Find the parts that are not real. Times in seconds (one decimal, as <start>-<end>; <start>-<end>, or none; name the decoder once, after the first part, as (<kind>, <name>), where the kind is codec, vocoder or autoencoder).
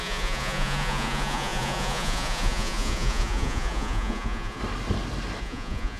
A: 0.0-4.6 (vocoder, Vocos); 5.4-6.0